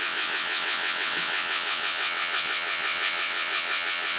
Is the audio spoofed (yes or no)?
yes